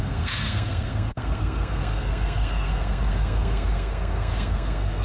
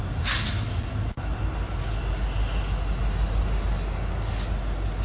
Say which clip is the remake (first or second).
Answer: first